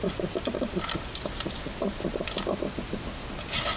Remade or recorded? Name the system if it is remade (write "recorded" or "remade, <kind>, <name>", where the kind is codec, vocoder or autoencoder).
recorded